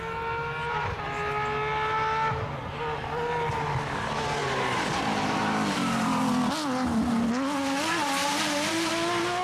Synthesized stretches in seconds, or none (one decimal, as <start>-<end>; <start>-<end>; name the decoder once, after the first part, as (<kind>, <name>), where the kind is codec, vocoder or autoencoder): 4.4-6.3 (vocoder, BigVGAN v2); 8.0-8.9